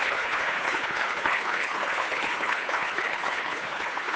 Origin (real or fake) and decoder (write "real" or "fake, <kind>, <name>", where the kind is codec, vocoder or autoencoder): fake, codec, HILCodec